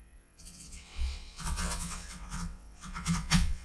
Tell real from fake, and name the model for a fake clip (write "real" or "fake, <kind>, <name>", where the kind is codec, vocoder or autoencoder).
fake, vocoder, WaveNeXt